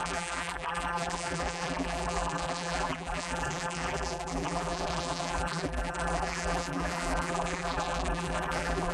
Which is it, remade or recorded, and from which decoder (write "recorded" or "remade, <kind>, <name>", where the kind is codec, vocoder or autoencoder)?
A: remade, vocoder, BigVGAN v2